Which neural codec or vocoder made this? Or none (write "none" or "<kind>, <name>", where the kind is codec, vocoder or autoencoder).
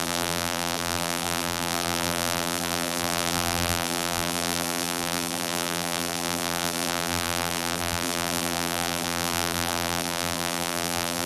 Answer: vocoder, BigVGAN v2